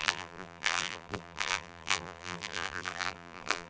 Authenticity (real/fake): fake